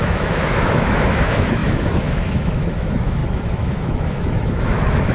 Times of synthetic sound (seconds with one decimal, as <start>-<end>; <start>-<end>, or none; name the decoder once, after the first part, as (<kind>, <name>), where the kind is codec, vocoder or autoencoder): 0.0-5.1 (autoencoder, DAC-VAE)